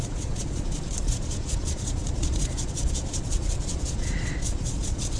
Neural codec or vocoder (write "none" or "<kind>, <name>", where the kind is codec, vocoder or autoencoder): vocoder, Vocos